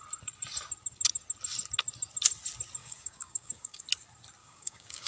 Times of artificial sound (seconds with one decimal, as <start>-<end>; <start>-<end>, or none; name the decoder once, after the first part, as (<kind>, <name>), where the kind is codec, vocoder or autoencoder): 2.8-3.8 (codec, DAC); 4.4-5.1